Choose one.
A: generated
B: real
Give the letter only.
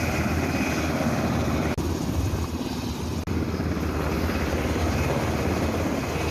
B